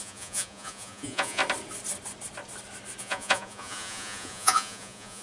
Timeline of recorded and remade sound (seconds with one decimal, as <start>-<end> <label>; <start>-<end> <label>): 0.0-1.4 remade; 1.4-3.0 recorded; 3.0-5.2 remade